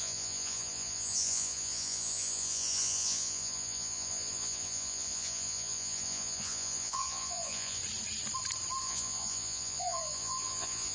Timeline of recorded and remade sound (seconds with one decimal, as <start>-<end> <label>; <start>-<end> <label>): 0.0-7.8 remade; 7.8-8.8 recorded; 8.8-10.9 remade